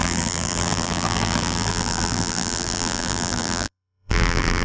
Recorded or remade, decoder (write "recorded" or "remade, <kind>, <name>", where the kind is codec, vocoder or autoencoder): remade, vocoder, BigVGAN v2